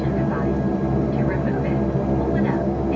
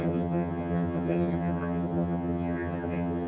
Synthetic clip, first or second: second